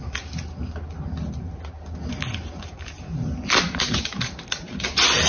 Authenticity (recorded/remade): recorded